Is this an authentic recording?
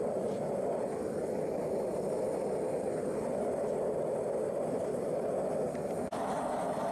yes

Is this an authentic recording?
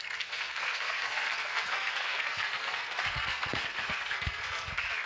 no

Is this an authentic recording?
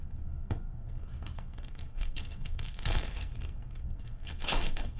no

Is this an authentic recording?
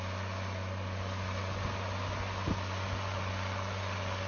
yes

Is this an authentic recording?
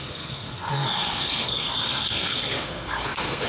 no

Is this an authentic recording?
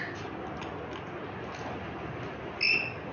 yes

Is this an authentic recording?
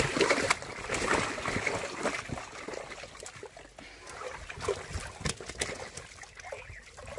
yes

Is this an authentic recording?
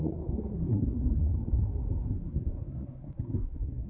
no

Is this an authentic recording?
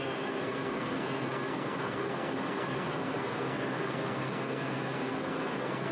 no